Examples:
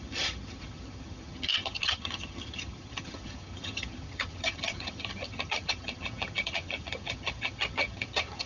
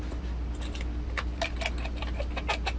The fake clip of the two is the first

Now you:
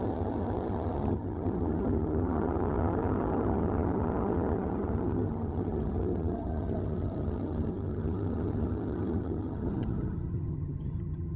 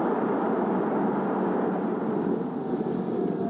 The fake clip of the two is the first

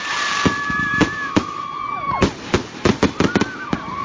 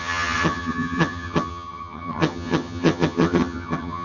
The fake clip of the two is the second